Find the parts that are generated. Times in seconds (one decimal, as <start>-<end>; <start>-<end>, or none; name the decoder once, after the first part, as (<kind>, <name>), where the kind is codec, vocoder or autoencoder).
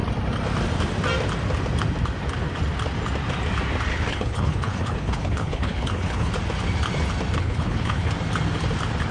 3.9-6.3 (codec, HILCodec); 7.4-8.1